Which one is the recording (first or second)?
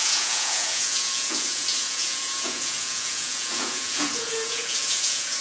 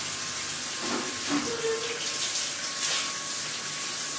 second